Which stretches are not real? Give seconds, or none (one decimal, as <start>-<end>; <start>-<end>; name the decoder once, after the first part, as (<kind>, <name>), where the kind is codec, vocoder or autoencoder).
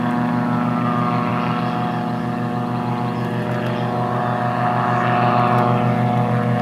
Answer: none